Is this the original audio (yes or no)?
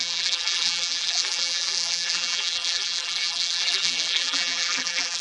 no